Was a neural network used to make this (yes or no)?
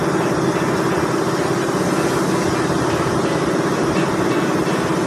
no